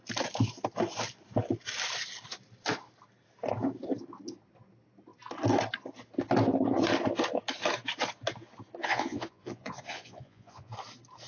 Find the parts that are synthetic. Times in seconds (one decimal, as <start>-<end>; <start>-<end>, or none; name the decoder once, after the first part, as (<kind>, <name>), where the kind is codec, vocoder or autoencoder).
8.8-10.7 (vocoder, Vocos)